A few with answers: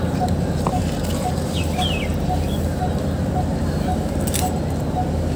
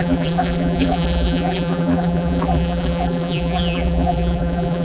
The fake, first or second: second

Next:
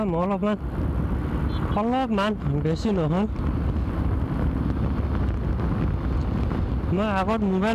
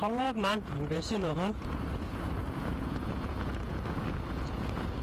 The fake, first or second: second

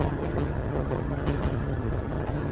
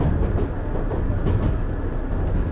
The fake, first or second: first